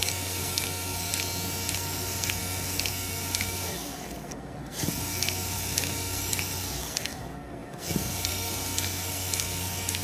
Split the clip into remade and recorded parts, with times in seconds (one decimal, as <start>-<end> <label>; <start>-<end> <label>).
0.0-1.1 remade; 1.1-1.7 recorded; 1.7-10.0 remade